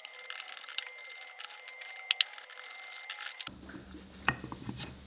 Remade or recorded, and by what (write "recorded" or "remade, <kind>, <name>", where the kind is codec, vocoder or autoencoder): recorded